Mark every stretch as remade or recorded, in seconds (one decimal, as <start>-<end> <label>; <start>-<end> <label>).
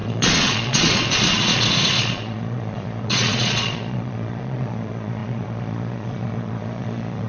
0.0-7.3 remade